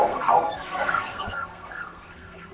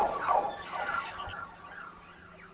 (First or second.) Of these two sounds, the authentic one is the second